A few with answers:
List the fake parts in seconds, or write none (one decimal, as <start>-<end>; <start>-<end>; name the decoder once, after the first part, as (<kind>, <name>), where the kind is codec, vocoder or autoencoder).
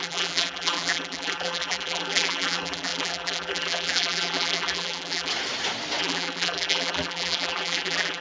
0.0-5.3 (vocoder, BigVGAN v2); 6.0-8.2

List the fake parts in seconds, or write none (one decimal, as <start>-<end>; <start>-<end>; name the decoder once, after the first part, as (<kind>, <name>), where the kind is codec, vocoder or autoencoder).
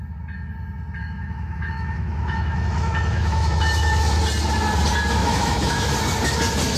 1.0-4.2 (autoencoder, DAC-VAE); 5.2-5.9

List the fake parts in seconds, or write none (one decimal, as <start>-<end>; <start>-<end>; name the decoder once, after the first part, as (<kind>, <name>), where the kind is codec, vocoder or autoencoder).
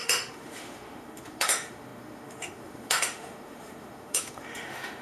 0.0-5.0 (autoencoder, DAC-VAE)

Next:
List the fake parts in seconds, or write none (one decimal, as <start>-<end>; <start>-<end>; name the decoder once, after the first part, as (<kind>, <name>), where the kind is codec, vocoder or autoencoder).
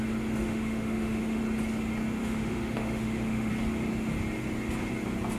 0.4-1.4 (autoencoder, DAC-VAE); 2.2-3.5